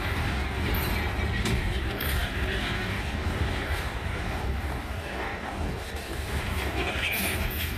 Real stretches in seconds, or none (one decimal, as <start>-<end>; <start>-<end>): 0.7-1.4